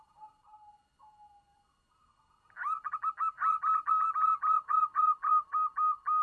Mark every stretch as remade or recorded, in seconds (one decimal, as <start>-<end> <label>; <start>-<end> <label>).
0.0-6.2 recorded